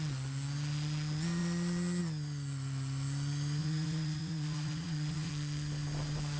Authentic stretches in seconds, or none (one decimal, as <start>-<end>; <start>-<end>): 0.0-3.6; 5.3-6.4